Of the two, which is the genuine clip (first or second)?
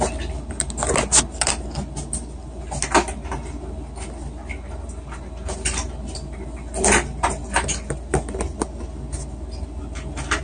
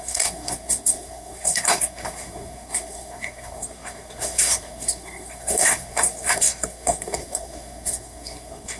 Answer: first